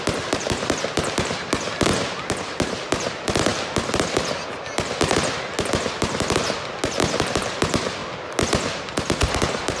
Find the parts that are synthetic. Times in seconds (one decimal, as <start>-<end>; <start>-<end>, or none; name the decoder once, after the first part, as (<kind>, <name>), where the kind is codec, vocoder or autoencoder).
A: none